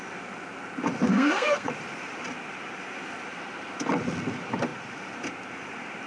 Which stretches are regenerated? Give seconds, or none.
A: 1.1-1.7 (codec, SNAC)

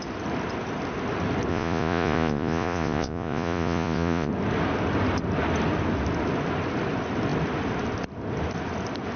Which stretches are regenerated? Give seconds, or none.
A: 1.5-4.3 (vocoder, Vocos)

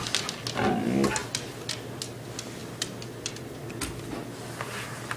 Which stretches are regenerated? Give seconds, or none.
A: none

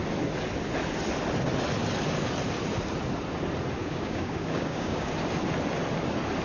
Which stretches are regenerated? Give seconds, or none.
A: 3.8-5.1 (codec, DAC)